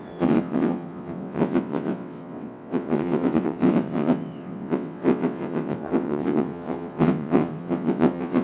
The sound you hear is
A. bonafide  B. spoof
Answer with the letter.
B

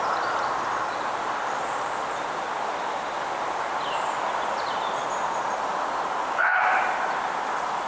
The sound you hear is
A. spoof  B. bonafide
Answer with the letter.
B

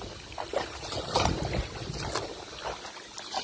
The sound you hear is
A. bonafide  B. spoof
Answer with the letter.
A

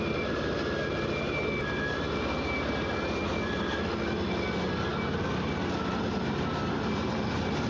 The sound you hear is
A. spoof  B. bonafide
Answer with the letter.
B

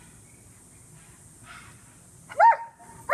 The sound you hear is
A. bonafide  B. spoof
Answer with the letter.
A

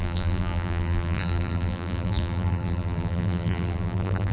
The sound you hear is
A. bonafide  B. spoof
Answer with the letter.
B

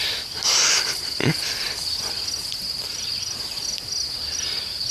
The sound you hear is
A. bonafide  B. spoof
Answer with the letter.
A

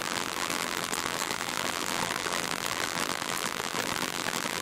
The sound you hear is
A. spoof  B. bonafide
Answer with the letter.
A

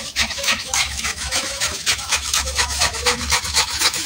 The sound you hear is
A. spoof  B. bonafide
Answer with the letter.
A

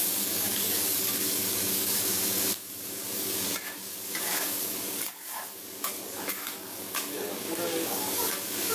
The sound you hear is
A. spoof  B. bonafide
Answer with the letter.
A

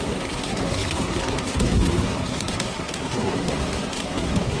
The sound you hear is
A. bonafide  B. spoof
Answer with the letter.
B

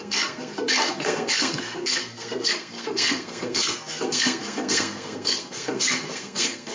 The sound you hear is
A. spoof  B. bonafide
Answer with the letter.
A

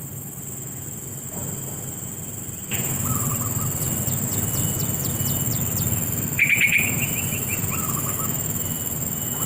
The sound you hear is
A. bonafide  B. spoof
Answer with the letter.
A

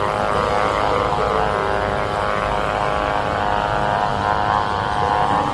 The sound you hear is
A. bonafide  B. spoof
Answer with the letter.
A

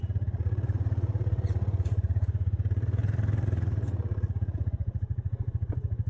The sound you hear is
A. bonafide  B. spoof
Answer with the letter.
B